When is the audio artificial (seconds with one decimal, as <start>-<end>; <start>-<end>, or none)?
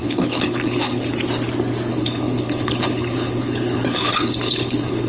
0.0-1.1; 1.9-5.1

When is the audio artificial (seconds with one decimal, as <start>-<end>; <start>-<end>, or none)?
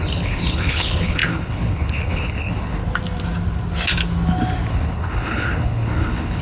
0.0-2.8; 4.7-6.4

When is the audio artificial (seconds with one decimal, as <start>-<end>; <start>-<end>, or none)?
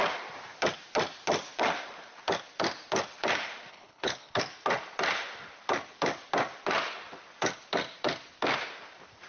3.7-4.4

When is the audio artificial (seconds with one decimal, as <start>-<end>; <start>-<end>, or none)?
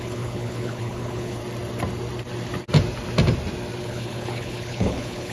0.0-1.4; 3.8-5.3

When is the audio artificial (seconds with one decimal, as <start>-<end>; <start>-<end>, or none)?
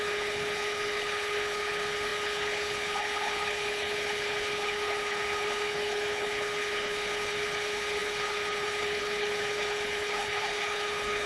0.0-11.3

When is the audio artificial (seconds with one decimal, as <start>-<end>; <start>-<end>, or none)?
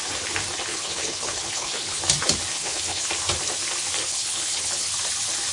0.7-2.0; 2.5-3.1; 4.0-4.9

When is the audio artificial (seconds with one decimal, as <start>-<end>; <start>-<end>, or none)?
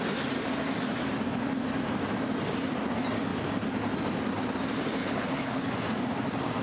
5.0-5.7